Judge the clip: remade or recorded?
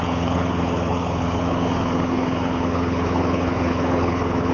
remade